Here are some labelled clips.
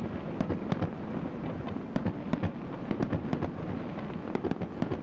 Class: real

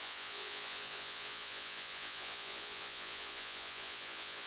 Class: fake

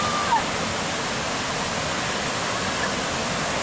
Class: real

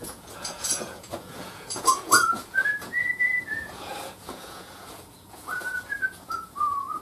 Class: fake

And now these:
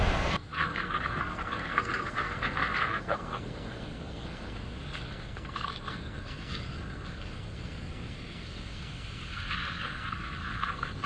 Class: fake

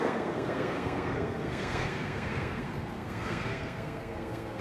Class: fake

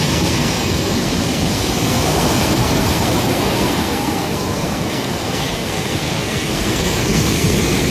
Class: fake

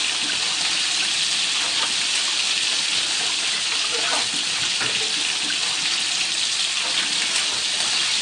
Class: real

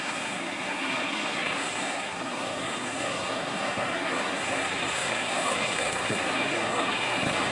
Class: fake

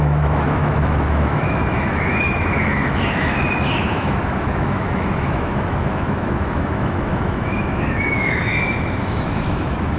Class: fake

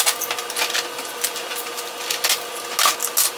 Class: real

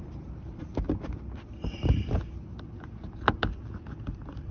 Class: real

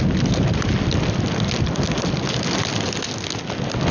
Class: real